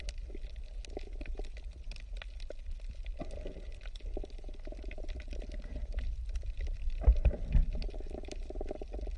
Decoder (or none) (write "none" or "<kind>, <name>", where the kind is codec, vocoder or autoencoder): none